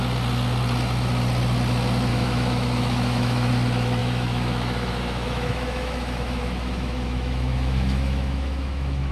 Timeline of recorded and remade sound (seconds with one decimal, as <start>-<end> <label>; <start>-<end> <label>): 0.0-2.1 recorded; 2.1-3.5 remade; 3.5-4.0 recorded; 4.0-9.1 remade